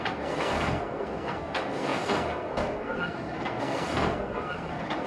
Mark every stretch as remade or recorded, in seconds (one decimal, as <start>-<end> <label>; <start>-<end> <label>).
0.0-5.1 remade

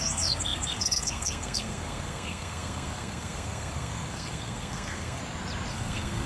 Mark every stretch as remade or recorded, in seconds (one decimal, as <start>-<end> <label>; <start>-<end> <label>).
0.0-5.2 remade; 5.2-5.7 recorded; 5.7-6.3 remade

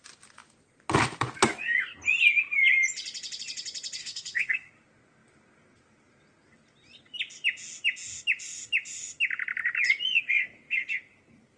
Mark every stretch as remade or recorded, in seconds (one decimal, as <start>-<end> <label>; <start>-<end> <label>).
0.0-4.0 recorded; 4.0-4.7 remade; 4.7-11.6 recorded